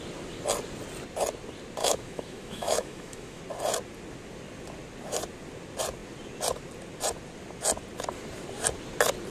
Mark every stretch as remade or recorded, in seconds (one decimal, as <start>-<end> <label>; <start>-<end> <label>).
0.0-1.8 recorded; 1.8-3.4 remade; 3.4-9.3 recorded